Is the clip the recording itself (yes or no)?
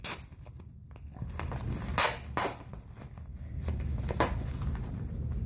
yes